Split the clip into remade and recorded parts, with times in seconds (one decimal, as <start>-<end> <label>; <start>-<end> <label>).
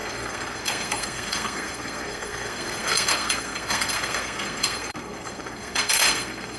0.0-6.6 remade